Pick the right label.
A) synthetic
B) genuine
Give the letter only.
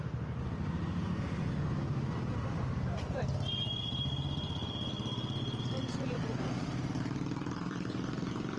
B